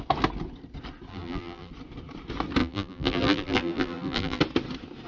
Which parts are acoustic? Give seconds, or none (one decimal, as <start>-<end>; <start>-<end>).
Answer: 0.0-1.1; 1.7-2.6; 4.4-5.1